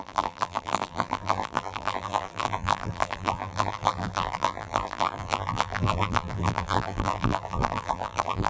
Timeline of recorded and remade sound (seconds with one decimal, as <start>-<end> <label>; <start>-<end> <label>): 0.0-8.5 remade